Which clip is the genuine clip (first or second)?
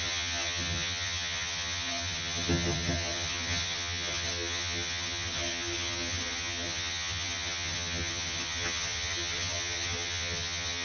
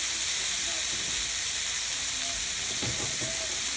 second